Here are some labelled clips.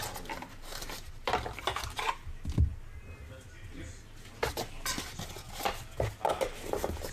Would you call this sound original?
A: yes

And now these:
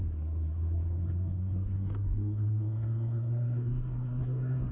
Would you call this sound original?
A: no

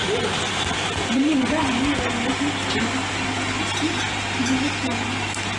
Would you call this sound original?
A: yes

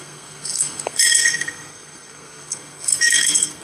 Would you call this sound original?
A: no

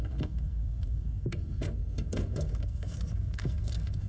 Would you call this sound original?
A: no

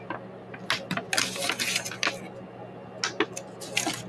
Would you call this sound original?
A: yes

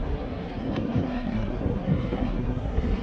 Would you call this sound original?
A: no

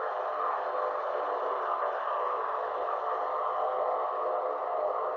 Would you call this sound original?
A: yes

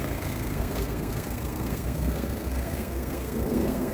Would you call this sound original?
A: no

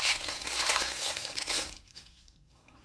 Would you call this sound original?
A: no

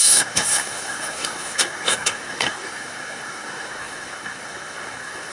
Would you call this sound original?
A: no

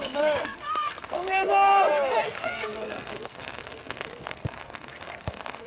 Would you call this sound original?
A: no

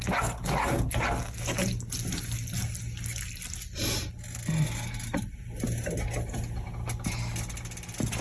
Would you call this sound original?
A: yes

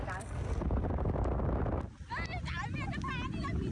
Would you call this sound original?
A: yes